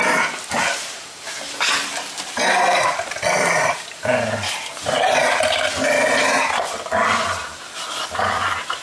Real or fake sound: real